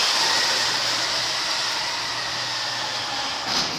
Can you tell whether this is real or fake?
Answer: real